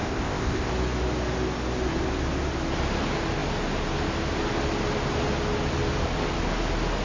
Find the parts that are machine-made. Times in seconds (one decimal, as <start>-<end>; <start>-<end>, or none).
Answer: 0.0-0.7